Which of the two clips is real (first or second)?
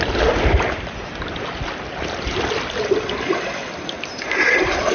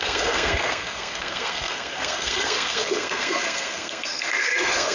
first